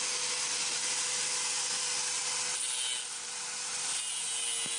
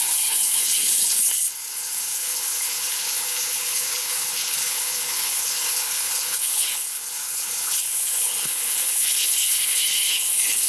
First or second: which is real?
first